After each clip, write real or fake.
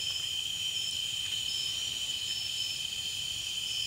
fake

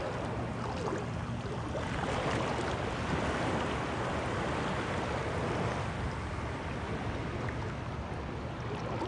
real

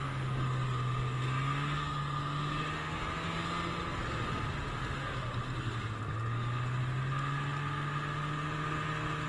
real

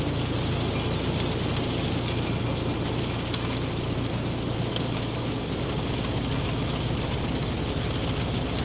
real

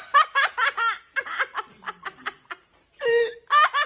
real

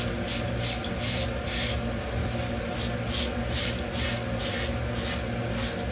real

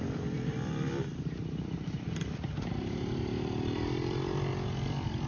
fake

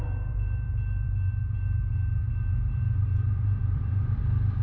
fake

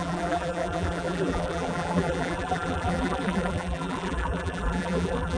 fake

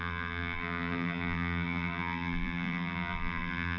fake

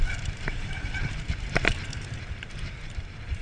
fake